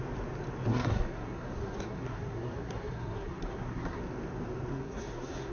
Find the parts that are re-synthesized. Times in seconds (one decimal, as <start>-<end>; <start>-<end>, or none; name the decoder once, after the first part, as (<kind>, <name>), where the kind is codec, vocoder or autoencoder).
0.7-4.0 (codec, SNAC); 4.7-5.5